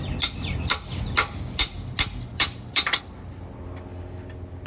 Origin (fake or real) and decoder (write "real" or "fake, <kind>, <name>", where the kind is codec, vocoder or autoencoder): real